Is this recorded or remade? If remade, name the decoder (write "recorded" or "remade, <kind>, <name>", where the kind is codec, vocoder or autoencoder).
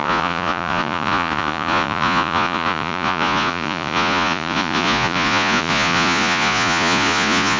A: remade, vocoder, Vocos